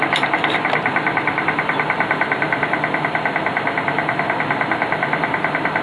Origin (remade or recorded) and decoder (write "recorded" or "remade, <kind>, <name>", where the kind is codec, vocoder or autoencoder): recorded